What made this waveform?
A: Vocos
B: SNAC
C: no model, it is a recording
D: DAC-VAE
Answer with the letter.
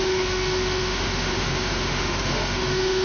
D